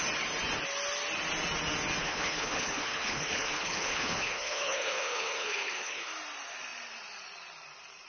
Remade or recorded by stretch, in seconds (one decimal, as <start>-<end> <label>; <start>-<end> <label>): 0.0-2.0 recorded; 2.0-6.1 remade; 6.1-8.1 recorded